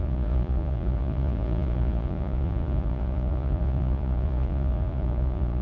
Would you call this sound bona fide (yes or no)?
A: no